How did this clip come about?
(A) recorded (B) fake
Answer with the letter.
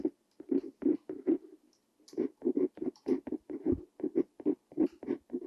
A